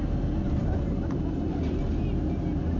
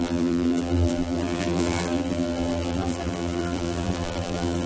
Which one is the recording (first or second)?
first